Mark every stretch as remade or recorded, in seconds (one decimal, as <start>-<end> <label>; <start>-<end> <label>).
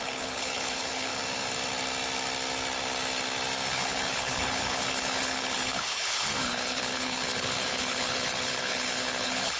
0.0-1.2 remade; 1.2-3.7 recorded; 3.7-9.6 remade